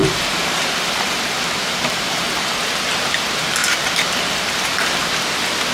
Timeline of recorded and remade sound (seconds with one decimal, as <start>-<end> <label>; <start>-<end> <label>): 0.0-2.6 remade; 2.6-3.6 recorded; 3.6-5.1 remade; 5.1-5.7 recorded